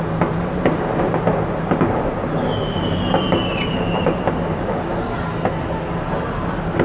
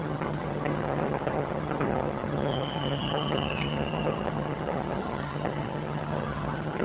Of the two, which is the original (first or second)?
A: first